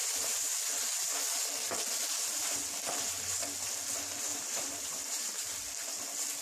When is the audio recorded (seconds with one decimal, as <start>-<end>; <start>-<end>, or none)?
0.6-4.3; 5.6-6.4